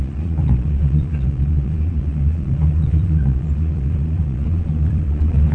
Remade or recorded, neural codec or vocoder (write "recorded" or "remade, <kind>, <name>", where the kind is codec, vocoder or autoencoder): remade, vocoder, Vocos